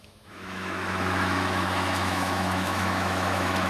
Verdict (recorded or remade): remade